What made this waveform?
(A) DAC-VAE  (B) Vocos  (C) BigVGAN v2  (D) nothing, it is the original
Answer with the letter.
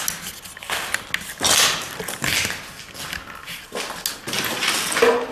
D